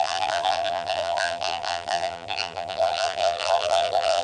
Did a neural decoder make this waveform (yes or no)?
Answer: yes